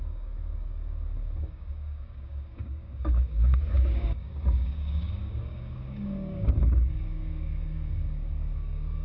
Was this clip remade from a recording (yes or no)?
yes